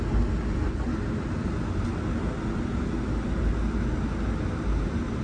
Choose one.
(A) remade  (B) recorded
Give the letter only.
B